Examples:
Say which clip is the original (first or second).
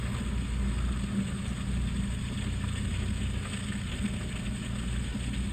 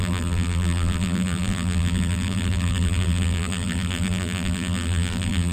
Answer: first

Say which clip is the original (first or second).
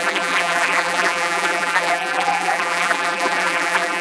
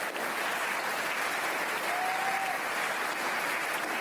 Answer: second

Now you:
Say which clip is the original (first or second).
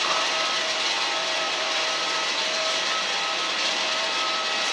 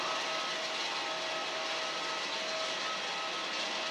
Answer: second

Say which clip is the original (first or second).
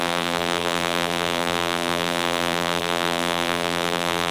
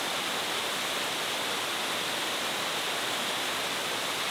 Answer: second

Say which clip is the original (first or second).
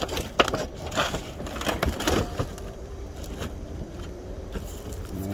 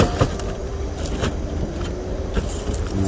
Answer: second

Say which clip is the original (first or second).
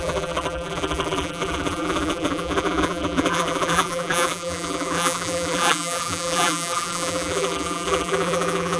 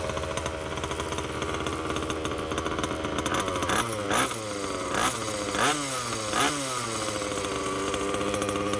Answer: second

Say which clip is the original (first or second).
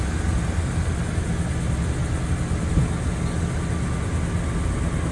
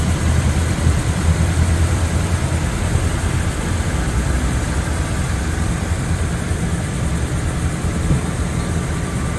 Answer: first